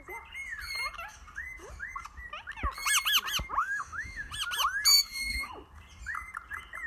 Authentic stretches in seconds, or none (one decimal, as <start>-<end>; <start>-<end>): 0.0-3.6; 4.3-4.9; 5.5-6.9